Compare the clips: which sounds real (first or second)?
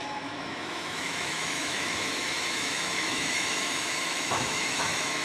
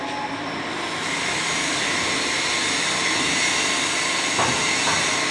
second